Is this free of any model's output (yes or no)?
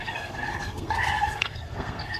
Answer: no